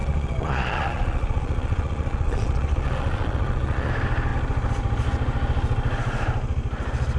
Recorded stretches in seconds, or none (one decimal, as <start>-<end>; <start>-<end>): 3.9-7.2